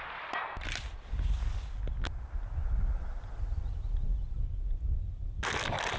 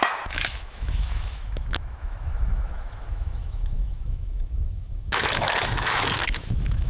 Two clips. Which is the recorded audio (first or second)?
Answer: first